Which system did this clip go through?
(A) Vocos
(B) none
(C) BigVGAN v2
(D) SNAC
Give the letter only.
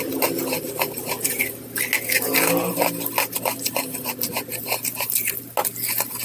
B